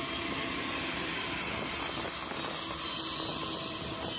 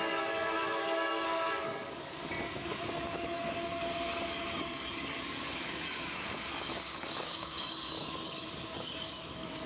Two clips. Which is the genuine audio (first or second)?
first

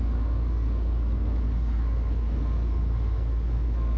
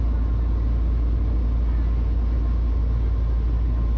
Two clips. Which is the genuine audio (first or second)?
second